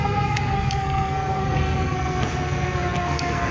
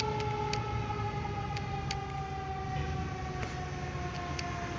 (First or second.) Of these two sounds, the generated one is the first